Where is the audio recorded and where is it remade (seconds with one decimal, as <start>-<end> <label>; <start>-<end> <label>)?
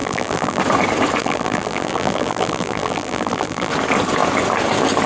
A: 0.0-0.6 remade; 0.6-1.2 recorded; 1.2-3.7 remade; 3.7-5.1 recorded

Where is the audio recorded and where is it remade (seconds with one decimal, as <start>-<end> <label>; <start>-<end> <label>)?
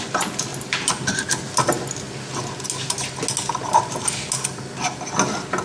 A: 0.0-5.6 recorded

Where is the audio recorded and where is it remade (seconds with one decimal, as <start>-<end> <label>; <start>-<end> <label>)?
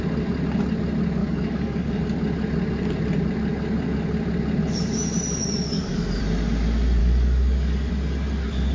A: 0.0-1.2 recorded; 1.2-2.0 remade; 2.0-5.4 recorded; 5.4-6.2 remade; 6.2-7.0 recorded; 7.0-7.9 remade; 7.9-8.7 recorded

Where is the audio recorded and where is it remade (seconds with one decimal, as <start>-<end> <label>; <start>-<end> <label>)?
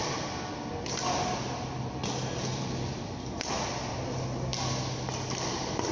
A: 0.0-5.9 recorded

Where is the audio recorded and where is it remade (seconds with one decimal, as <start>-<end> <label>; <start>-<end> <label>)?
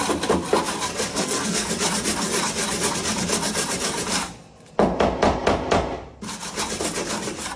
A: 0.0-1.1 recorded; 1.1-1.7 remade; 1.7-7.6 recorded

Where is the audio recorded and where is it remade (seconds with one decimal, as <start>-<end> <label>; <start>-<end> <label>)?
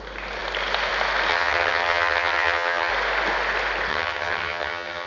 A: 0.0-1.3 recorded; 1.3-2.9 remade; 2.9-3.9 recorded; 3.9-5.1 remade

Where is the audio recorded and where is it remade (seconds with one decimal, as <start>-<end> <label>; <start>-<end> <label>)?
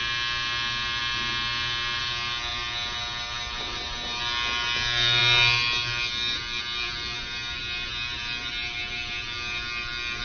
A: 0.0-10.2 recorded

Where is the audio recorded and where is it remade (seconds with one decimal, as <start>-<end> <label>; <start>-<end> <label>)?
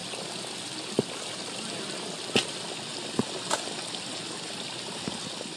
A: 0.0-5.6 recorded